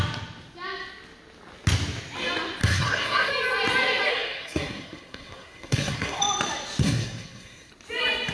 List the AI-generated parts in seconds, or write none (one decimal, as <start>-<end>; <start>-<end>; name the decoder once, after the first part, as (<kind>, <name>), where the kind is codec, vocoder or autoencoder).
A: 2.6-3.3 (codec, SNAC); 4.1-6.2; 6.8-7.7

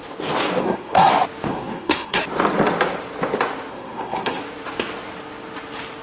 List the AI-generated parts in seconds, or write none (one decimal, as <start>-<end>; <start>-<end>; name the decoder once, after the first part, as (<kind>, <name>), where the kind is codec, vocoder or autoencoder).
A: 0.6-1.1 (codec, SNAC); 1.5-2.2; 3.7-4.4

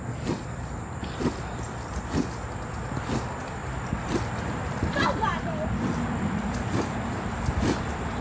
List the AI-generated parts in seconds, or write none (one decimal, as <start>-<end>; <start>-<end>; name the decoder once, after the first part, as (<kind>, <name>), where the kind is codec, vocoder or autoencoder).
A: none

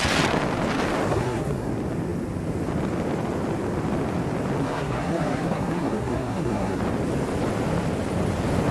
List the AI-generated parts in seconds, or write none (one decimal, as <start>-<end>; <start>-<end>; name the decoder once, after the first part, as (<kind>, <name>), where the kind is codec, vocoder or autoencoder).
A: 1.1-1.7 (codec, SNAC); 4.6-6.8